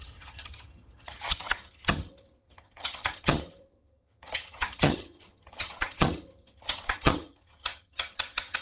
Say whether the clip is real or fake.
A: fake